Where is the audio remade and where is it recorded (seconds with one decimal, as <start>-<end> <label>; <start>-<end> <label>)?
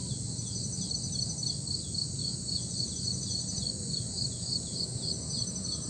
0.0-2.2 recorded; 2.2-5.9 remade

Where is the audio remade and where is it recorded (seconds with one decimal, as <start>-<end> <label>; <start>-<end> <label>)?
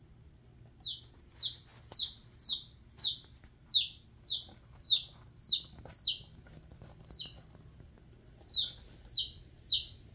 0.0-10.1 recorded